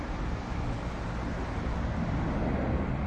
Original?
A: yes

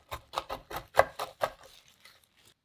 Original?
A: yes